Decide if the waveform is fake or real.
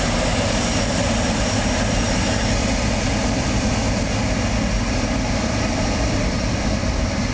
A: real